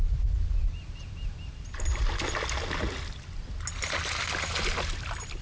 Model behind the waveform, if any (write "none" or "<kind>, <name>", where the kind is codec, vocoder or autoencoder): none